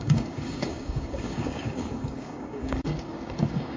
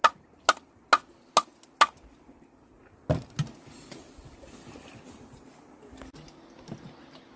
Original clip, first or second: second